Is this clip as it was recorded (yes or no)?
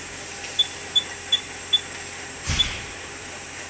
no